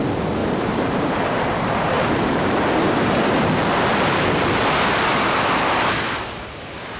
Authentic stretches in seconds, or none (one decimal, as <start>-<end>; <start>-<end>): 0.0-0.4; 3.4-7.0